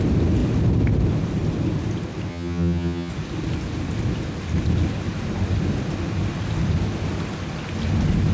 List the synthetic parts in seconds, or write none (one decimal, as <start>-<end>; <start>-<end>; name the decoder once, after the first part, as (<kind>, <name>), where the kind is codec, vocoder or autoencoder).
2.3-3.1 (vocoder, HiFi-GAN)